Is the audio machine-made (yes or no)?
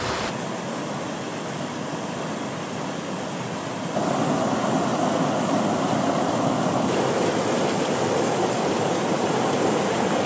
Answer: no